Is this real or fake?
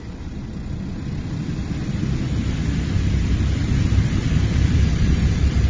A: fake